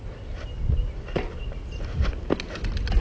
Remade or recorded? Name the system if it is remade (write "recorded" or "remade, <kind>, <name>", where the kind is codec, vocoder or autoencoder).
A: recorded